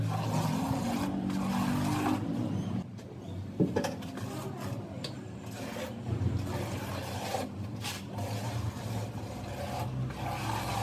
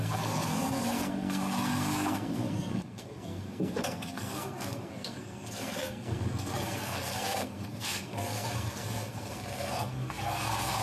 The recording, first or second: first